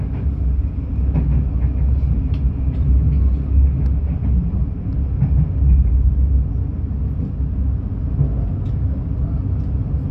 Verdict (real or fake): real